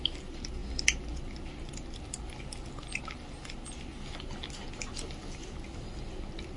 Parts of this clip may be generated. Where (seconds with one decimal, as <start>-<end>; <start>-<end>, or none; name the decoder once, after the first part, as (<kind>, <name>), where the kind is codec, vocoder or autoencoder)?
none

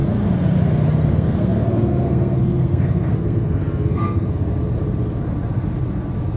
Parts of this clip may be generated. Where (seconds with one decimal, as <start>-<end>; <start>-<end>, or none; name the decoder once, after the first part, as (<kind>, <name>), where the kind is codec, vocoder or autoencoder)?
1.1-4.5 (codec, SNAC)

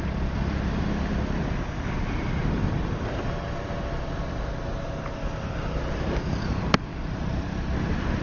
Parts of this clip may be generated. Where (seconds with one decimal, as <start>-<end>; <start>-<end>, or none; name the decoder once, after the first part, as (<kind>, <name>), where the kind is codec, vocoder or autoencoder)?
none

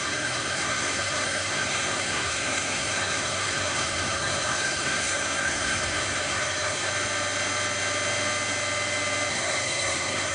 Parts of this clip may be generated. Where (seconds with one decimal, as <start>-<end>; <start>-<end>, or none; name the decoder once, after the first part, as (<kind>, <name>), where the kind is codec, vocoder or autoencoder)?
0.0-6.9 (codec, SNAC); 9.3-10.3

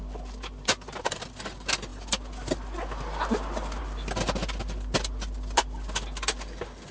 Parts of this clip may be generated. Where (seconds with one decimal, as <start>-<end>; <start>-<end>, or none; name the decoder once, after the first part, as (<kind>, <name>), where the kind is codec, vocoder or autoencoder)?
none